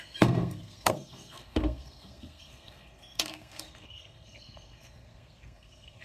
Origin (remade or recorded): remade